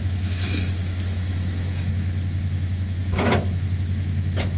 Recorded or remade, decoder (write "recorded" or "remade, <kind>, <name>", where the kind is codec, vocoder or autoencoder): remade, autoencoder, DAC-VAE